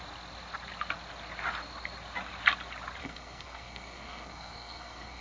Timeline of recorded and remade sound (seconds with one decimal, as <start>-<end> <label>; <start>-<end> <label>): 0.0-3.0 recorded; 3.0-5.2 remade